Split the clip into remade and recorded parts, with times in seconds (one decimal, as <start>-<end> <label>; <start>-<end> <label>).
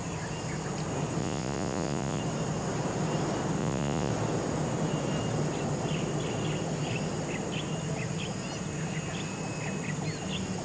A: 0.0-1.2 recorded; 1.2-2.2 remade; 2.2-3.6 recorded; 3.6-4.1 remade; 4.1-10.6 recorded